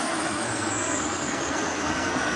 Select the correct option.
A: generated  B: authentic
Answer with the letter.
A